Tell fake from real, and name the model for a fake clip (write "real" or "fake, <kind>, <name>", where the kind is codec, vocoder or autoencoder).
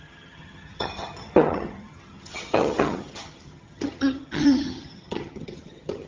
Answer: fake, vocoder, HiFi-GAN